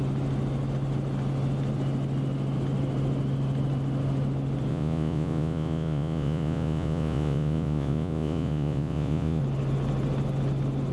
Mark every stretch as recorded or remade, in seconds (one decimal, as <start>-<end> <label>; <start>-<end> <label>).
0.0-4.7 recorded; 4.7-9.4 remade; 9.4-10.9 recorded